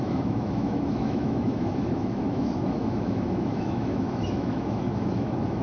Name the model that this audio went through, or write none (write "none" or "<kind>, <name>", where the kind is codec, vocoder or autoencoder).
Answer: autoencoder, DAC-VAE